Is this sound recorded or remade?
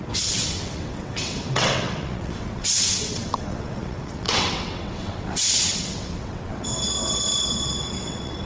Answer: remade